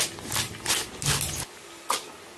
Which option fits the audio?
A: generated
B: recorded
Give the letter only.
B